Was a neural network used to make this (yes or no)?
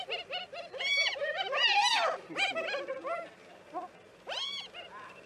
no